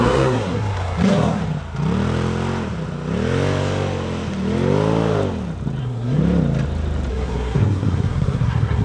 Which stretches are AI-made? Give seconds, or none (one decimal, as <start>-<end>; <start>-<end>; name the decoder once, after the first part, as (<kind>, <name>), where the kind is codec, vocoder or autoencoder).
0.0-1.4 (codec, SNAC); 5.8-6.2; 7.1-8.8